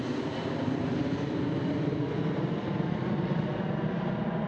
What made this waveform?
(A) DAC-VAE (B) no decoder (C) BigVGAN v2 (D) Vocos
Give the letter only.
B